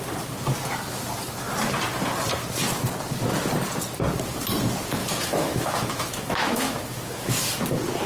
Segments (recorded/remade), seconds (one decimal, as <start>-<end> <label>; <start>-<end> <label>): 0.0-5.0 recorded; 5.0-7.4 remade; 7.4-8.1 recorded